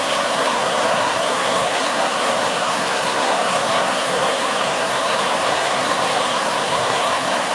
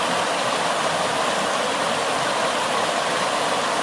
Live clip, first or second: second